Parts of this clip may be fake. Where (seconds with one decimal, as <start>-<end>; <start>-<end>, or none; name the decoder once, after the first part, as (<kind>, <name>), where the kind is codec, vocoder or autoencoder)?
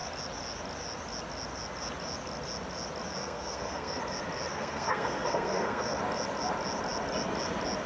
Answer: 3.2-4.0 (codec, SNAC); 4.5-6.0